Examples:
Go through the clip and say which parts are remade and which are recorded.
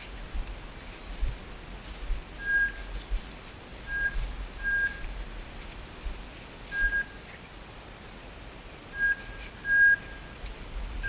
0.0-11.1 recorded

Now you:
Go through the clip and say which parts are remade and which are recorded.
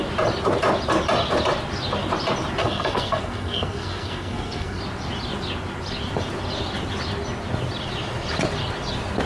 0.0-2.6 recorded; 2.6-4.8 remade; 4.8-9.3 recorded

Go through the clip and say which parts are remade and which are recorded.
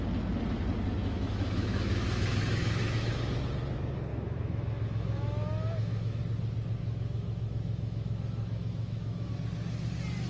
0.0-1.0 recorded; 1.0-3.2 remade; 3.2-4.1 recorded; 4.1-6.2 remade; 6.2-6.8 recorded; 6.8-9.3 remade; 9.3-10.3 recorded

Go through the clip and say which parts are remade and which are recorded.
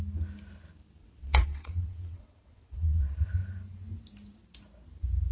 0.0-1.0 recorded; 1.0-3.0 remade; 3.0-5.3 recorded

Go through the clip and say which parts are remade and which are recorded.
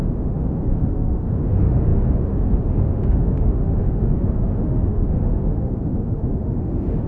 0.0-7.1 remade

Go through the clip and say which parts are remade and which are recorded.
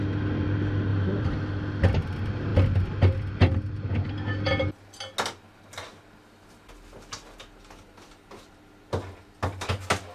0.0-0.9 recorded; 0.9-1.5 remade; 1.5-10.1 recorded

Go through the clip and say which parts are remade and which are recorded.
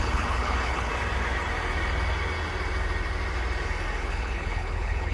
0.0-0.9 remade; 0.9-4.0 recorded; 4.0-5.1 remade